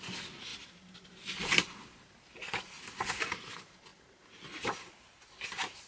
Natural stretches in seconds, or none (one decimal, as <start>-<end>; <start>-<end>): 0.0-5.9

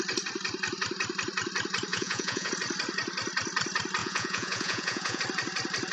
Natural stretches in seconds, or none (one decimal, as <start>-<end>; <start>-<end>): 0.0-1.9; 2.5-4.0; 5.2-5.9

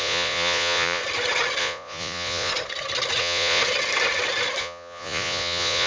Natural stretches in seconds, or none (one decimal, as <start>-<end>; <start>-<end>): 1.0-1.6; 2.5-3.2; 3.6-4.6